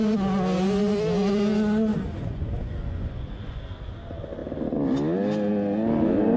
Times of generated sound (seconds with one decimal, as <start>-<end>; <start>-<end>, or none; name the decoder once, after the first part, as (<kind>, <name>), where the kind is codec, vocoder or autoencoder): 1.9-3.6 (vocoder, Vocos)